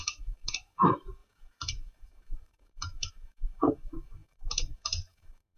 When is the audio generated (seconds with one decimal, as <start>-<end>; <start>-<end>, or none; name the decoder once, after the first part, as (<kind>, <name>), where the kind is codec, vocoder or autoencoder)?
0.0-5.6 (autoencoder, DAC-VAE)